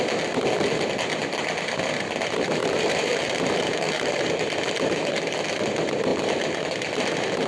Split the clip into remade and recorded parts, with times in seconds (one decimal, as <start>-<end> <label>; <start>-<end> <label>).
0.0-2.6 recorded; 2.6-4.2 remade; 4.2-7.5 recorded